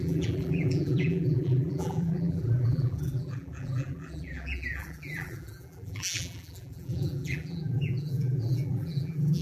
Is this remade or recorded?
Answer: remade